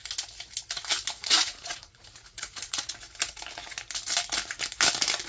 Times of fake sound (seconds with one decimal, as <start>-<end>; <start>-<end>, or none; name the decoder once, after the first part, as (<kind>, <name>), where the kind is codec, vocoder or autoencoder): 1.2-2.9 (vocoder, Vocos)